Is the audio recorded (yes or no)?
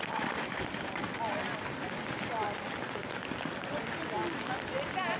yes